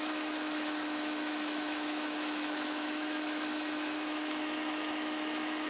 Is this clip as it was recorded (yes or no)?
no